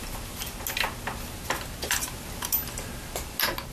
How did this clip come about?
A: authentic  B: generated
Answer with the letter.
A